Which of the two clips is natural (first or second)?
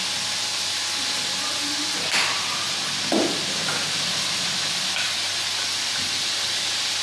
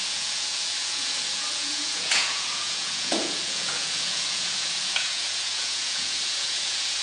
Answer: first